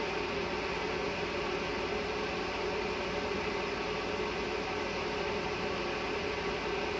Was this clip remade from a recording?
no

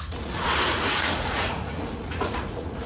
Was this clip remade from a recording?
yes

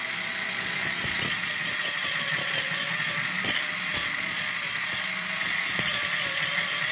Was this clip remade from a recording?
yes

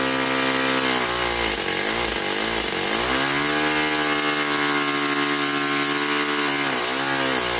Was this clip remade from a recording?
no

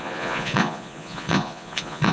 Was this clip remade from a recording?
yes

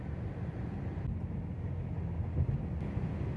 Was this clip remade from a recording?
no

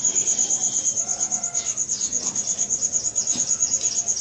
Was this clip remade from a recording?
no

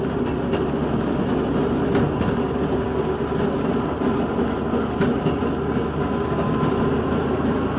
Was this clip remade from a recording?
no